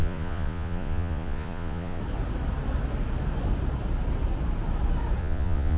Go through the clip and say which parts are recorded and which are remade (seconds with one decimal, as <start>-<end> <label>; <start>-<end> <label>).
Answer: 0.0-2.0 remade; 2.0-5.2 recorded; 5.2-5.8 remade